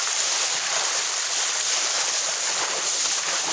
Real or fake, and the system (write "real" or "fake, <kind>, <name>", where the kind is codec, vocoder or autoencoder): fake, vocoder, BigVGAN v2